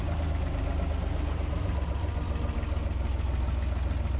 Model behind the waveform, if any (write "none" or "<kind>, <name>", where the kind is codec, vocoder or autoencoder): none